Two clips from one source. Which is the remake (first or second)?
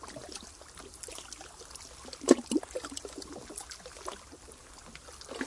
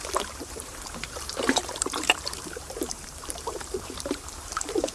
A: second